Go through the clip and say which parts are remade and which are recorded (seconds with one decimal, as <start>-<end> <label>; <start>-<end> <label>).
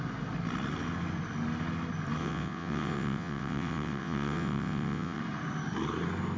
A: 0.0-2.2 recorded; 2.2-5.2 remade; 5.2-6.4 recorded